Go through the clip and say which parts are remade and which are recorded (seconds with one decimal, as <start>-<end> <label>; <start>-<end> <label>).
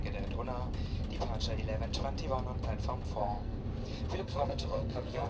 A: 0.0-3.2 recorded; 3.2-3.6 remade; 3.6-4.2 recorded; 4.2-5.3 remade